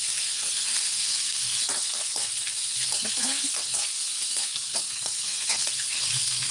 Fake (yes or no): yes